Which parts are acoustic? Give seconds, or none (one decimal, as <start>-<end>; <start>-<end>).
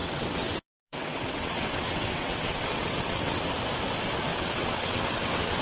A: 3.4-4.3